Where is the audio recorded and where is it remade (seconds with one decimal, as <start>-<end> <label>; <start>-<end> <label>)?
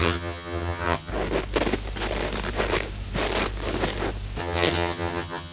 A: 0.0-1.1 remade; 1.1-4.4 recorded; 4.4-5.5 remade